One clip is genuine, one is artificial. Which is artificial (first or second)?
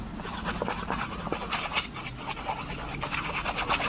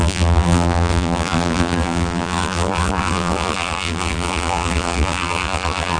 second